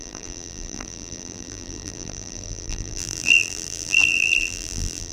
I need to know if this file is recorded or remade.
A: remade